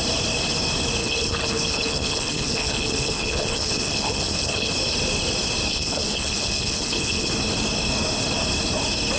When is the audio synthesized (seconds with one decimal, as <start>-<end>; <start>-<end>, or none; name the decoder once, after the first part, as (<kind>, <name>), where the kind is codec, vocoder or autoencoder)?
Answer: 1.0-4.7 (codec, HILCodec); 5.7-7.3